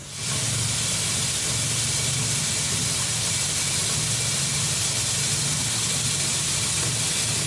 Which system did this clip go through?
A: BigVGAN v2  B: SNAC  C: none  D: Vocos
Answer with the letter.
C